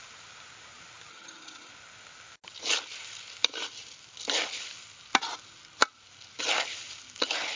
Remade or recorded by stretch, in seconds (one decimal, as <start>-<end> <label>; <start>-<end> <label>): 0.0-1.1 recorded; 1.1-1.7 remade; 1.7-7.6 recorded